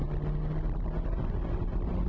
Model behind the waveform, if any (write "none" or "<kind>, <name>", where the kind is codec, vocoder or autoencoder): none